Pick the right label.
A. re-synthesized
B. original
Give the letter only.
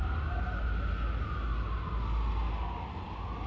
B